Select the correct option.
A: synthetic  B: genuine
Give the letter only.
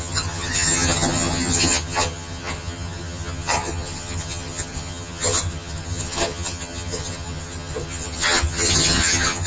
A